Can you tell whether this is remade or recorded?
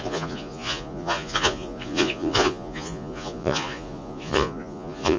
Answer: remade